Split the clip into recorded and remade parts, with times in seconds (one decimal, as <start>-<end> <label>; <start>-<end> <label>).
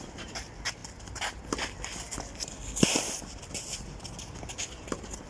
0.0-0.8 recorded; 0.8-4.0 remade; 4.0-5.3 recorded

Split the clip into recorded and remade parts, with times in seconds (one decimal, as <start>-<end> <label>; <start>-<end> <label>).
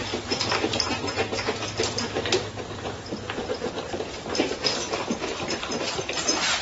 0.0-4.7 recorded; 4.7-6.6 remade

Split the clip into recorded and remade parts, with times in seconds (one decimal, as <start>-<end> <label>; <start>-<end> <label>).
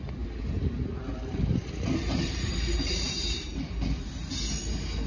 0.0-1.6 recorded; 1.6-4.1 remade; 4.1-5.1 recorded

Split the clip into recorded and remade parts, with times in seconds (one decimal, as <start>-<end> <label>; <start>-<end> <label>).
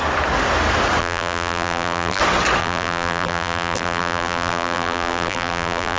0.0-1.0 recorded; 1.0-2.2 remade; 2.2-2.6 recorded; 2.6-6.0 remade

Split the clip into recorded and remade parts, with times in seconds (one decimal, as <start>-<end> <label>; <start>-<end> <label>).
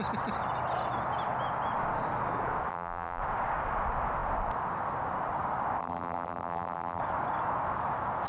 0.0-2.7 recorded; 2.7-3.2 remade; 3.2-5.8 recorded; 5.8-7.0 remade; 7.0-8.3 recorded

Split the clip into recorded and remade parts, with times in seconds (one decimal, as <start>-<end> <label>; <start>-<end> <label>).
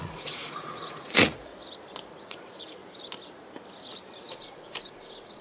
0.0-1.5 remade; 1.5-2.1 recorded; 2.1-2.8 remade; 2.8-4.3 recorded; 4.3-5.4 remade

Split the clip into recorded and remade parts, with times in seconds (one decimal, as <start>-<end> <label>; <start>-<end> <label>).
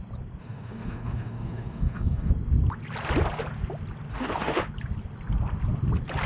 0.0-0.4 recorded; 0.4-2.3 remade; 2.3-4.1 recorded; 4.1-4.6 remade; 4.6-6.3 recorded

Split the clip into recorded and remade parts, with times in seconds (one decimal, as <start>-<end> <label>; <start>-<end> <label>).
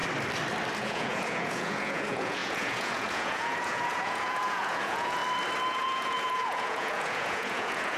0.0-0.8 recorded; 0.8-5.2 remade; 5.2-5.7 recorded; 5.7-8.0 remade